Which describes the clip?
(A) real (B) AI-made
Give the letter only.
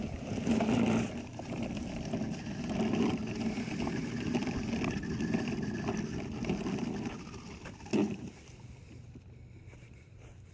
B